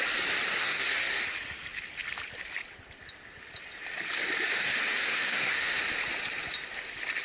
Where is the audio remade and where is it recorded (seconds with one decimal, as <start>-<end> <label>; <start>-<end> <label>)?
0.0-0.6 recorded; 0.6-1.2 remade; 1.2-5.0 recorded; 5.0-5.8 remade; 5.8-7.2 recorded

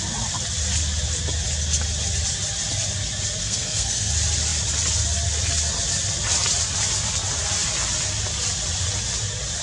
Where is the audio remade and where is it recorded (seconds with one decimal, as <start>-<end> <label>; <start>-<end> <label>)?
0.0-3.4 recorded; 3.4-4.1 remade; 4.1-9.6 recorded

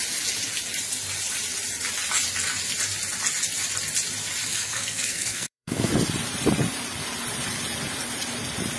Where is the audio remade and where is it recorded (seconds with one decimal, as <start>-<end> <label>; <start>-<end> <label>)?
0.0-4.5 recorded; 4.5-5.9 remade; 5.9-8.8 recorded

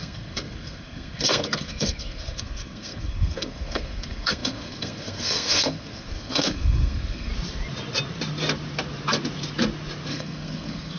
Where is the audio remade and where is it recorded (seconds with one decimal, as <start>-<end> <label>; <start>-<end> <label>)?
0.0-7.3 remade; 7.3-10.1 recorded; 10.1-11.0 remade